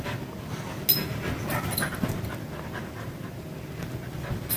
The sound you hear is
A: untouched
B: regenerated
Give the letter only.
A